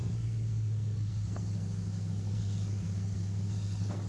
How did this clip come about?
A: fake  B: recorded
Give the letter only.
A